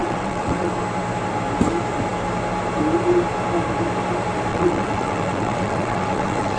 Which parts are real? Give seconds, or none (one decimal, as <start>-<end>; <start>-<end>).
0.7-4.5